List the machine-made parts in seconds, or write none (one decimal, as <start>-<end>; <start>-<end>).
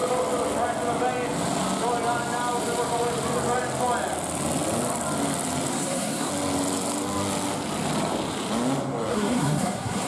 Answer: 5.7-6.3; 9.1-10.1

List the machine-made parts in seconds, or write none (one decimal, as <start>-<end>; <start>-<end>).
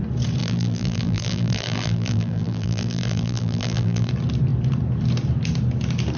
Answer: 0.4-4.1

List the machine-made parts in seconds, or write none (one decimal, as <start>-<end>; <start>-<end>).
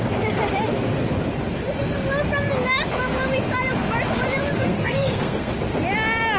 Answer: 4.6-5.5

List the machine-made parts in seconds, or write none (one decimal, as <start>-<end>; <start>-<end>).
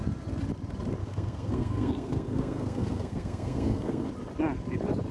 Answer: 1.0-4.1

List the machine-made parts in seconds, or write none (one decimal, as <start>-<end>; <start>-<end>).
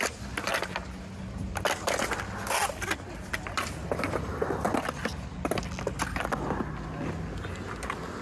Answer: none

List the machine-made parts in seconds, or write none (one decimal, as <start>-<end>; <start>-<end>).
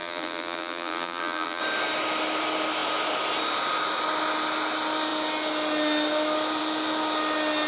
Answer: 0.0-1.6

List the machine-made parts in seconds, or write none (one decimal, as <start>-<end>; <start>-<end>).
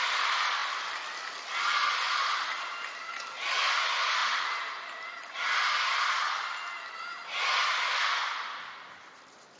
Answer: none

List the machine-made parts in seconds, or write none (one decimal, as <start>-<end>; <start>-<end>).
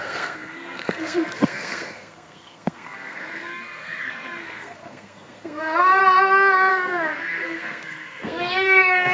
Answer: 0.0-6.0; 6.7-9.1